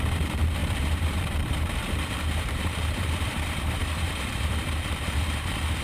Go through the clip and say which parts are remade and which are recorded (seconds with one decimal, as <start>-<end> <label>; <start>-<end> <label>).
0.0-5.8 remade